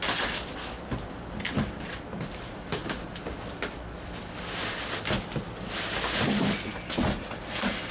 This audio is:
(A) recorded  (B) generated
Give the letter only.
A